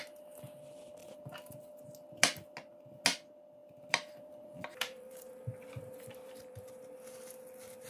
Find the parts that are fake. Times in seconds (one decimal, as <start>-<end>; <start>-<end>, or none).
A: 1.0-1.6; 3.6-6.7